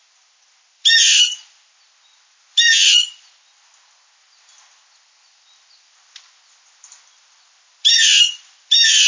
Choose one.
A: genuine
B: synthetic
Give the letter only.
A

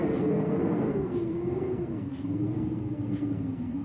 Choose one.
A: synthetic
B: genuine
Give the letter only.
A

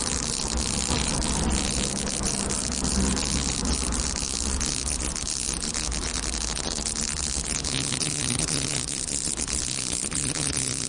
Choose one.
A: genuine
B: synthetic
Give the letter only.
A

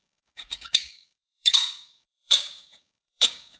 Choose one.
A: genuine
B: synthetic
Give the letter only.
B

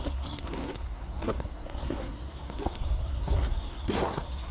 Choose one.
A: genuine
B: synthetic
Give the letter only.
B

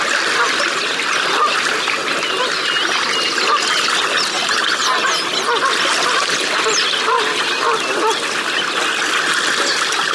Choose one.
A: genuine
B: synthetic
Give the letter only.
A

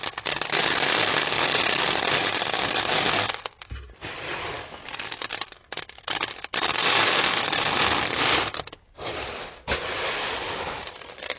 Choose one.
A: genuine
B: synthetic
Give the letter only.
A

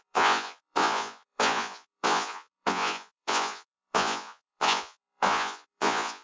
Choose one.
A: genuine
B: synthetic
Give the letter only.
B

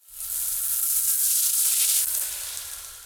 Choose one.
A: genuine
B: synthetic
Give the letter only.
A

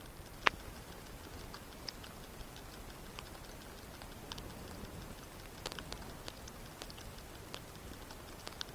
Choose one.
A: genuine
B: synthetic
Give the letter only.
A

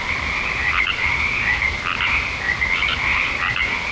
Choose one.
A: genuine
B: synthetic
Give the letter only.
A